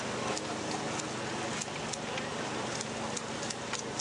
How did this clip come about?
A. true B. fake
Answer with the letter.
A